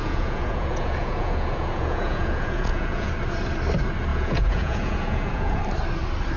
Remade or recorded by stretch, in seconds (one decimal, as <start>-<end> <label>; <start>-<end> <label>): 0.0-3.1 remade; 3.1-4.1 recorded; 4.1-5.6 remade; 5.6-6.4 recorded